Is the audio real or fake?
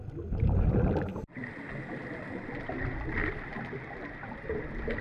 real